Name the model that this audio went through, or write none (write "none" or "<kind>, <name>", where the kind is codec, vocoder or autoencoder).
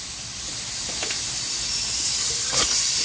none